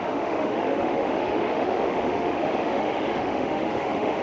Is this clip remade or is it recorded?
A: remade